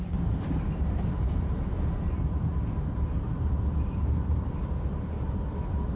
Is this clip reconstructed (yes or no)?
yes